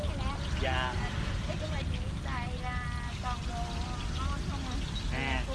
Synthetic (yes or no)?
no